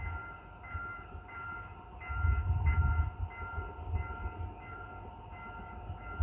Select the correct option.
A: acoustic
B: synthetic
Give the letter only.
A